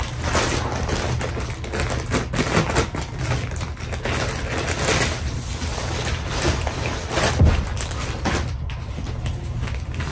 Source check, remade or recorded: recorded